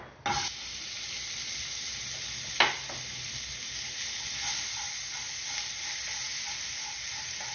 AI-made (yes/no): no